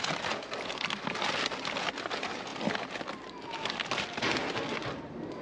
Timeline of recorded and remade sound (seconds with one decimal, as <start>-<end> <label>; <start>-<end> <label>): 0.0-5.4 recorded